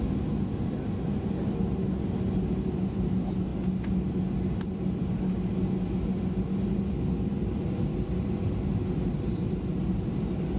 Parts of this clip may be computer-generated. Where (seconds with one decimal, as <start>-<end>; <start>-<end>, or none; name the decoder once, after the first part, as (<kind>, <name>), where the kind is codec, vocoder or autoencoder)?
none